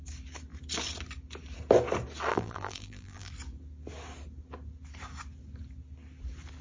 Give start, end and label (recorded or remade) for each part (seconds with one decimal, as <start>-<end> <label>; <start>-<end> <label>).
0.0-2.3 recorded; 2.3-3.3 remade; 3.3-6.6 recorded